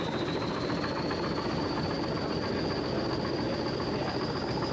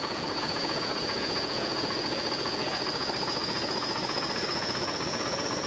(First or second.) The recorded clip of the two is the first